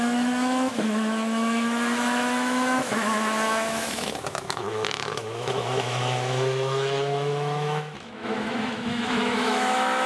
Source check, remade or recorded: remade